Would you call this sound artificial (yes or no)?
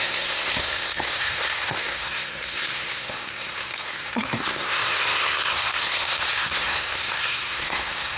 yes